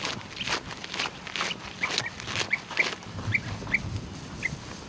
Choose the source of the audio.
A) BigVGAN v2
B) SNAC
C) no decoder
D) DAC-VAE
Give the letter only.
C